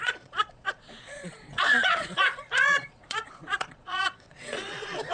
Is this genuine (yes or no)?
no